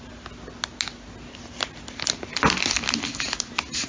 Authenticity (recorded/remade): recorded